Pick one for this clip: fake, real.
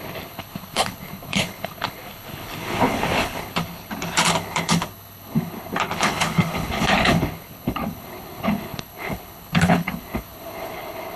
fake